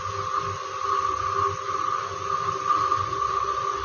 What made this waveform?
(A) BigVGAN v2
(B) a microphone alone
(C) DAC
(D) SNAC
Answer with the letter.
B